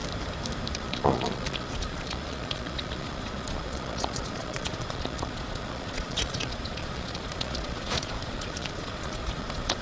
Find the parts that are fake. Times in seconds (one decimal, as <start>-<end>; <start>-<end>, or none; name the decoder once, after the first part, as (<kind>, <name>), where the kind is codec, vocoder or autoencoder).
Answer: 0.7-9.8 (vocoder, Vocos)

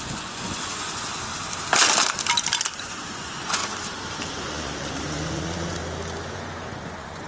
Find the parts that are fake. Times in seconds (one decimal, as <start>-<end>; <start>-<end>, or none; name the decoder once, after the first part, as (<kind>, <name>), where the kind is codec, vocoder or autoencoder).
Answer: 0.0-1.3 (vocoder, Vocos); 2.8-3.6; 4.4-5.8; 6.3-7.3

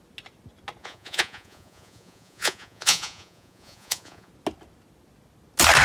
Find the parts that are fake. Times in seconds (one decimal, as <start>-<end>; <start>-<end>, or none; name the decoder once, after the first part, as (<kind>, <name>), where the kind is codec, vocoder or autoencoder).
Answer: 0.8-4.3 (vocoder, Vocos)